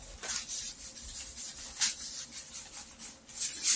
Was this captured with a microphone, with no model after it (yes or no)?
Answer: yes